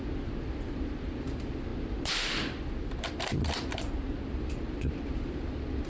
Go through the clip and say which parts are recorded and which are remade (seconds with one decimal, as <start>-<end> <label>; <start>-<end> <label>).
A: 0.0-5.9 recorded